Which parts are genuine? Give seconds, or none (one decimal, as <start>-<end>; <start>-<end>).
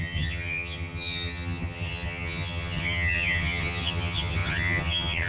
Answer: none